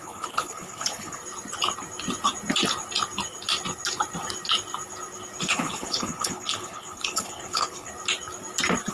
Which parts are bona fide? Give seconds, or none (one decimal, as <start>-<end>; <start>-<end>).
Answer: 1.2-5.4; 7.9-8.9